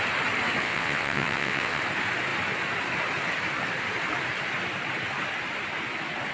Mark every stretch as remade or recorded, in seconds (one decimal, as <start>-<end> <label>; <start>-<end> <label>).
0.0-0.6 recorded; 0.6-1.8 remade; 1.8-6.3 recorded